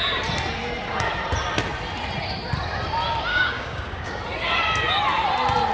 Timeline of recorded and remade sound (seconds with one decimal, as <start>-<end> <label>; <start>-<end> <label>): 0.0-3.3 recorded; 3.3-4.2 remade; 4.2-5.7 recorded